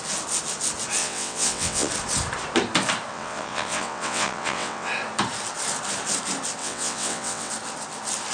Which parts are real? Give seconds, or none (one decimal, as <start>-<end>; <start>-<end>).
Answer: 0.0-1.0; 1.9-3.1; 4.9-6.6; 7.5-8.3